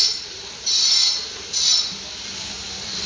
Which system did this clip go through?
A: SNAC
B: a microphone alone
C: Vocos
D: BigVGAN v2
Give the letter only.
B